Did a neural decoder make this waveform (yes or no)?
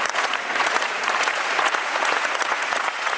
yes